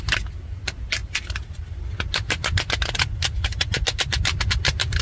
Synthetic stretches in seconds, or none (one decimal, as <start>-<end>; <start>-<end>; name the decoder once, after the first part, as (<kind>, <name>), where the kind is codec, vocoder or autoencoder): none